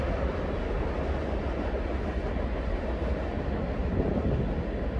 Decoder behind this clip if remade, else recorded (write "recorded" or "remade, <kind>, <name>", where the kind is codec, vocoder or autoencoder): recorded